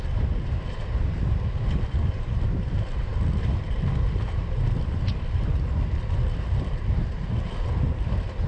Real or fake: real